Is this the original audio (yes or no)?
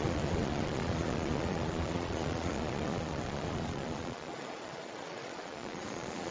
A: no